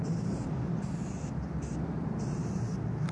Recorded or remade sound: recorded